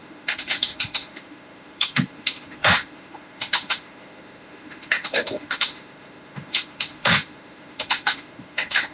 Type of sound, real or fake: fake